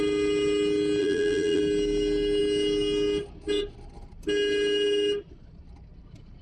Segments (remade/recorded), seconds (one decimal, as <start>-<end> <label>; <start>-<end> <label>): 0.0-1.0 recorded; 1.0-1.6 remade; 1.6-6.4 recorded